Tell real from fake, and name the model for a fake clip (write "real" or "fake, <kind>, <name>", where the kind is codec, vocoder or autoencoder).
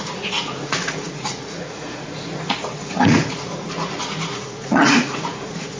fake, vocoder, Vocos